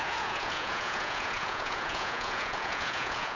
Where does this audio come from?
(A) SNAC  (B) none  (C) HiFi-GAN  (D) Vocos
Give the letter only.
D